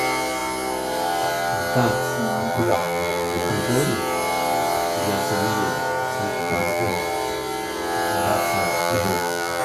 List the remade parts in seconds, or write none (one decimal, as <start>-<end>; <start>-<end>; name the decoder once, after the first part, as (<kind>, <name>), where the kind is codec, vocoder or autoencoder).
2.5-3.5 (vocoder, BigVGAN v2); 6.4-7.0; 8.8-9.6